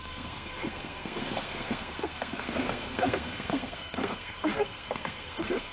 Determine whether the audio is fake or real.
fake